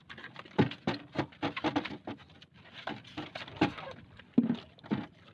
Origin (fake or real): real